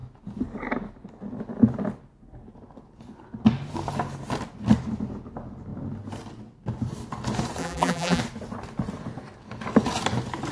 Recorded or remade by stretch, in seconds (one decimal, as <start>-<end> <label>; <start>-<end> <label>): 0.0-7.6 recorded; 7.6-8.2 remade; 8.2-10.5 recorded